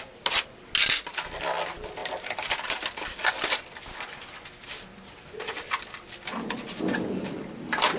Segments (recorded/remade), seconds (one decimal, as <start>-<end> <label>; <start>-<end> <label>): 0.0-8.0 recorded

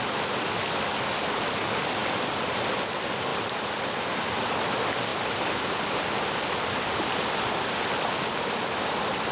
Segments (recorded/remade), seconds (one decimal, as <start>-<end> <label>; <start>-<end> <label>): 0.0-2.0 recorded; 2.0-2.6 remade; 2.6-3.3 recorded; 3.3-3.9 remade; 3.9-5.1 recorded; 5.1-6.0 remade; 6.0-9.3 recorded

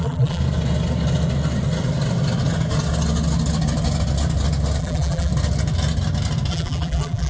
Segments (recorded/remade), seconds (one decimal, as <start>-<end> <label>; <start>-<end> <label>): 0.0-0.4 remade; 0.4-4.8 recorded; 4.8-5.3 remade; 5.3-6.5 recorded; 6.5-7.3 remade

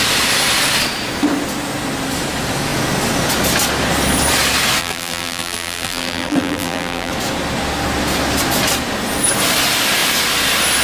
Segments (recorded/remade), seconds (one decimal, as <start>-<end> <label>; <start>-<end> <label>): 0.0-4.8 recorded; 4.8-7.1 remade; 7.1-10.8 recorded

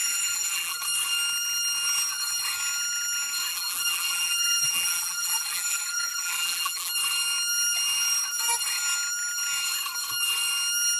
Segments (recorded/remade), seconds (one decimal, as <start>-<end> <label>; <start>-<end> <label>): 0.0-0.8 remade; 0.8-3.5 recorded; 3.5-6.9 remade; 6.9-11.0 recorded